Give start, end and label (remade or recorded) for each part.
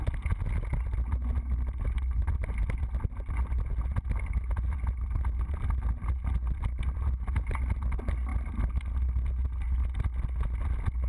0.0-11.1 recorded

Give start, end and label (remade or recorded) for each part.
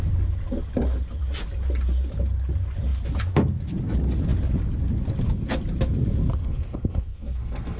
0.0-6.4 recorded; 6.4-7.8 remade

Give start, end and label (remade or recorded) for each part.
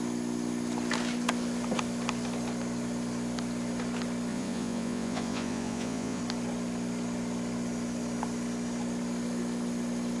0.0-4.3 recorded; 4.3-6.2 remade; 6.2-10.2 recorded